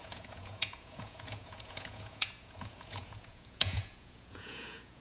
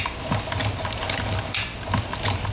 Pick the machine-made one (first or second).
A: first